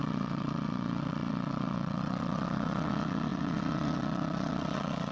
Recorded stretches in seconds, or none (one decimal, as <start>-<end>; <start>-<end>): none